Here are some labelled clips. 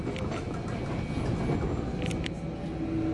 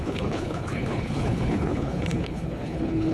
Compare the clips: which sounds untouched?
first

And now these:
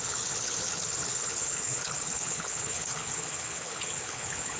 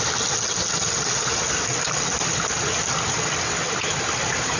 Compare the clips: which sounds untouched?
second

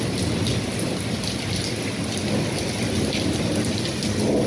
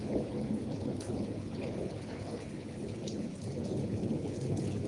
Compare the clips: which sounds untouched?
first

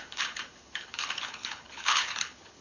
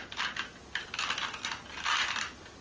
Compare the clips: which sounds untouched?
second